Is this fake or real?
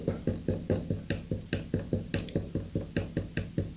real